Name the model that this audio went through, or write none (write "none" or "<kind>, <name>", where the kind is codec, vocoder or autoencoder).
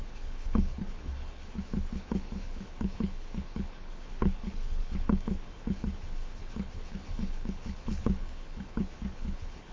codec, HILCodec